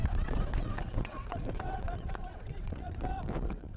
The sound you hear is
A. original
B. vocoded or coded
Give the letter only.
B